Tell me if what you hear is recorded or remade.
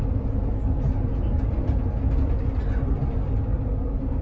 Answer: recorded